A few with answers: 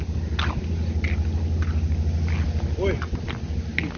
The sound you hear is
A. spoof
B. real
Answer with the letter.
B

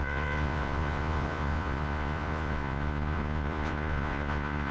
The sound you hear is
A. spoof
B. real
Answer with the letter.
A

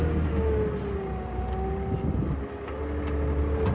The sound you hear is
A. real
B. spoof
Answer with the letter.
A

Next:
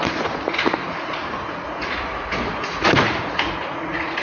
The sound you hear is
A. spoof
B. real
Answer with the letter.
A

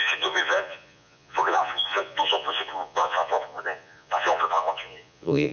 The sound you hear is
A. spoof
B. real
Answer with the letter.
A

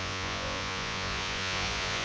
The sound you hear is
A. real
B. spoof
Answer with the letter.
B